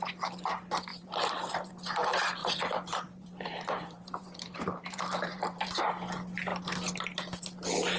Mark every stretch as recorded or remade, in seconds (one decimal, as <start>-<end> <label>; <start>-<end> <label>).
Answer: 0.0-0.9 recorded; 0.9-1.7 remade; 1.7-2.4 recorded; 2.4-5.9 remade; 5.9-8.0 recorded